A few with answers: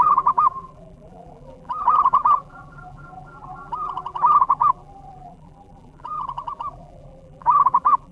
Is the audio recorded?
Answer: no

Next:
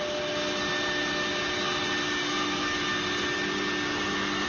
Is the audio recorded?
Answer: yes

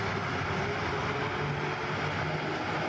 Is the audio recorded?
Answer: yes